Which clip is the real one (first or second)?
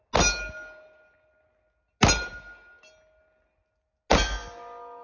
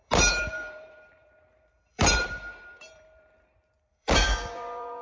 first